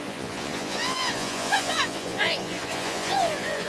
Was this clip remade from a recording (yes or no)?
yes